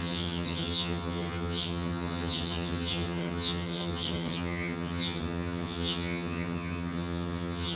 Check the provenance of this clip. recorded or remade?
remade